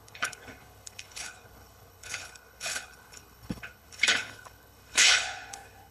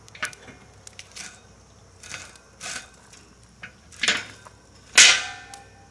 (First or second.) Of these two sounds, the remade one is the first